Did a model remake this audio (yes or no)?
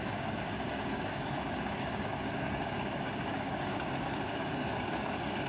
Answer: yes